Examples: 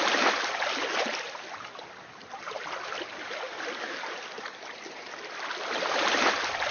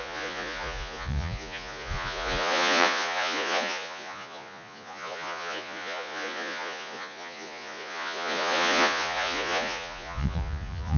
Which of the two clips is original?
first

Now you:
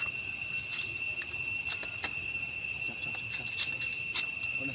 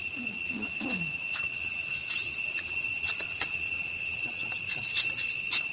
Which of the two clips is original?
first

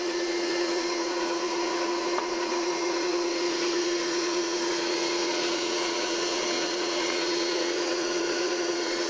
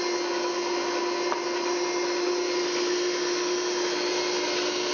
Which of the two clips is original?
second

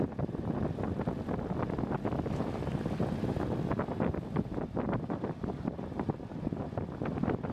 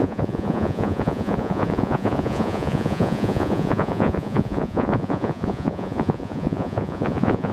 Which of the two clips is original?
first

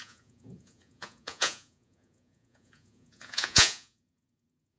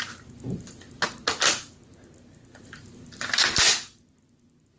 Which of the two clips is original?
second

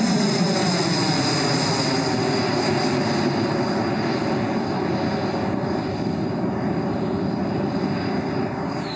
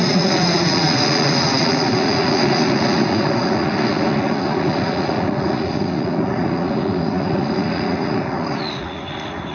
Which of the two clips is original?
first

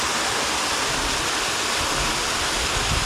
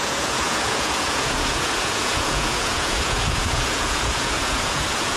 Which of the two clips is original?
first